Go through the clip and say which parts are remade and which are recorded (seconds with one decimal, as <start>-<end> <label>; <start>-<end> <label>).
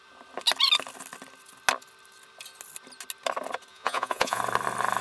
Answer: 0.0-3.7 recorded; 3.7-4.4 remade; 4.4-5.0 recorded